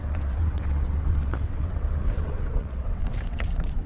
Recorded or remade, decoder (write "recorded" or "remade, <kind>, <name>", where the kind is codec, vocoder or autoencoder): remade, vocoder, WaveNeXt